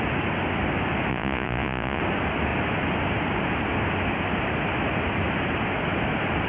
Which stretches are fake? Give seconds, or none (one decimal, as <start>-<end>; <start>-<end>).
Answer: 1.1-2.0